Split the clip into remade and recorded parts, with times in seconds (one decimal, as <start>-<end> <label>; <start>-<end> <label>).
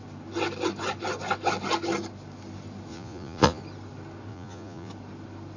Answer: 0.0-2.9 recorded; 2.9-3.6 remade; 3.6-4.3 recorded; 4.3-4.9 remade; 4.9-5.6 recorded